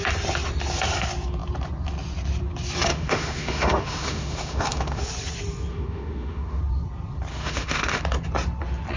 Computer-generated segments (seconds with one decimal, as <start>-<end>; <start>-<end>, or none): 2.9-5.0; 5.7-6.6; 7.3-8.0